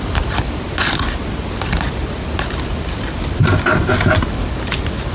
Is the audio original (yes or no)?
yes